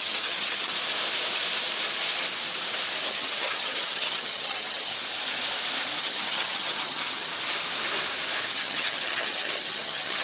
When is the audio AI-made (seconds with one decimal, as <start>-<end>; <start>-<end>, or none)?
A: 0.0-0.7; 3.1-4.9; 6.0-7.3; 8.5-10.2